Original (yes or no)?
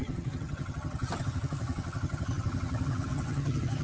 no